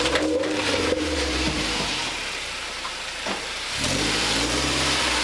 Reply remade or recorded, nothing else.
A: remade